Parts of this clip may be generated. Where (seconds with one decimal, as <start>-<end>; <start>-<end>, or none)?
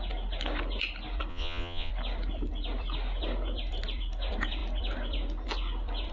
1.3-1.9